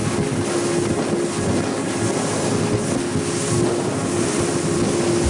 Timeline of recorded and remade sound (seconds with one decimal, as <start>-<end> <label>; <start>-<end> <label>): 0.0-5.3 recorded